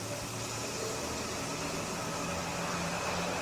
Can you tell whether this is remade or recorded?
remade